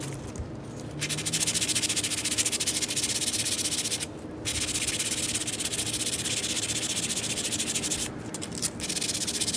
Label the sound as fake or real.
real